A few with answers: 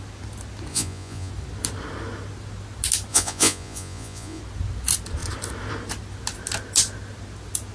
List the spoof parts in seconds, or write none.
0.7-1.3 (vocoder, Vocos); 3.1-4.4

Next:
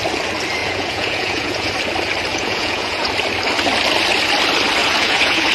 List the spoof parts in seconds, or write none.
0.6-1.7 (vocoder, Vocos); 2.3-3.1; 4.8-5.5

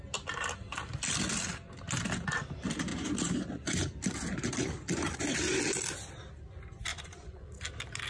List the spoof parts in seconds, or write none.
6.9-7.5 (vocoder, Vocos)

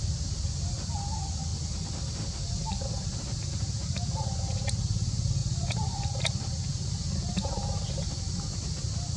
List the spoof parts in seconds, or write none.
1.5-3.0 (vocoder, BigVGAN v2)

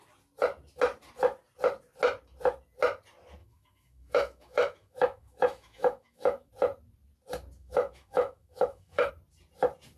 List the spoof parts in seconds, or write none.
3.4-6.5 (autoencoder, DAC-VAE); 7.6-9.1

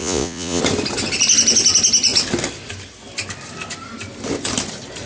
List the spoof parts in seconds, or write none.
0.0-0.6 (vocoder, Vocos)

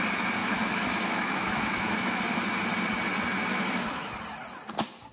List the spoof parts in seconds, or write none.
0.4-2.2 (autoencoder, DAC-VAE); 3.5-4.1